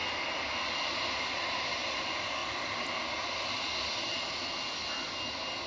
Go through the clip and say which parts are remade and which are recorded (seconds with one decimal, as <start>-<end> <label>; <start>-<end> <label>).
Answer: 0.0-5.7 recorded